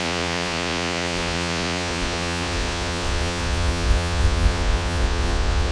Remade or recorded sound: remade